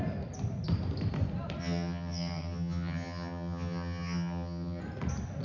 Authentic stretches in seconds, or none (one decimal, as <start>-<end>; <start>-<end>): 0.0-1.6; 4.8-5.4